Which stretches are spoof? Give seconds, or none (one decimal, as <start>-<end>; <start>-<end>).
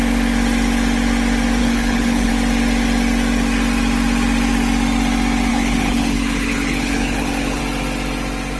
1.6-2.3; 5.5-7.6